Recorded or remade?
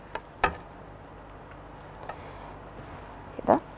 recorded